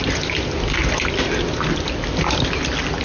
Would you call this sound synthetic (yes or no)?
no